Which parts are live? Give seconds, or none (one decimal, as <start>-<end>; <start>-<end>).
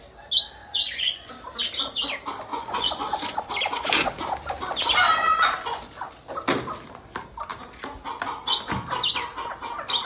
0.0-0.6; 1.3-2.5; 4.1-5.1; 5.8-10.0